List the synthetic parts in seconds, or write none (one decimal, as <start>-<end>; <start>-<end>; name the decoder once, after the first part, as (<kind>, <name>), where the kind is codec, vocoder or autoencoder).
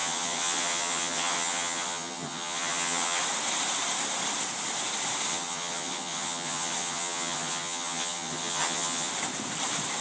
0.0-3.2 (vocoder, HiFi-GAN); 5.3-9.1